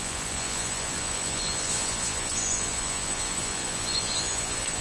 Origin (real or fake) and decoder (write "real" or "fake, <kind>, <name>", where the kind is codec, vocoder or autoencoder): fake, vocoder, Vocos